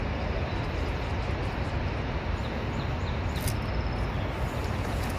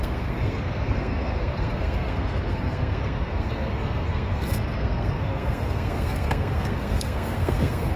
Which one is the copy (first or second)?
second